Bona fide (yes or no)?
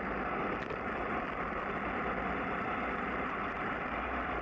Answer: yes